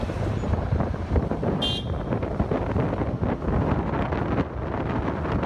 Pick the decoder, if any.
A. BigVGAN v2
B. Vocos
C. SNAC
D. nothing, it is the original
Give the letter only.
D